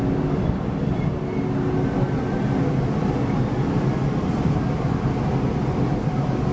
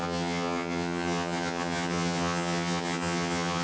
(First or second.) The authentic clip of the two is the first